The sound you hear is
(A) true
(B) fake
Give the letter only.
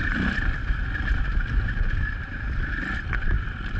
A